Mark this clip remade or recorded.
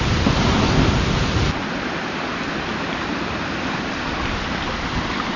recorded